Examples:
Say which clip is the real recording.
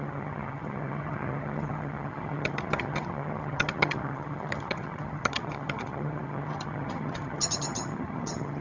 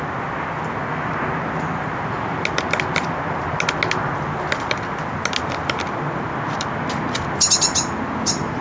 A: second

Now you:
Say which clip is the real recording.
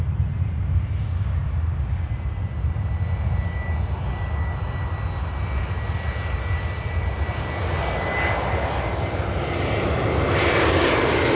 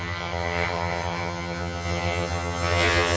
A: first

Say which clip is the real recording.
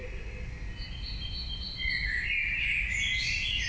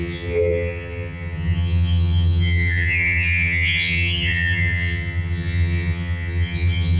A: first